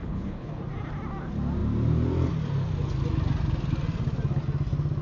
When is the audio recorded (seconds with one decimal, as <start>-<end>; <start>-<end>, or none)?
0.6-5.0